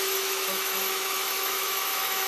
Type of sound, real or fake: fake